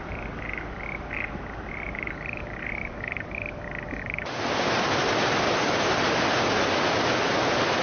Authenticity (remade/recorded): recorded